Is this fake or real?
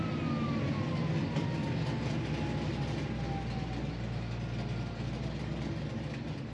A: real